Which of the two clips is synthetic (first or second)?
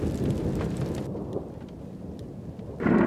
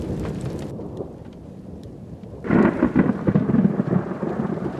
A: second